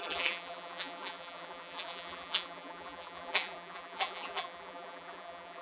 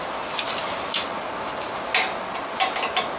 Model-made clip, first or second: first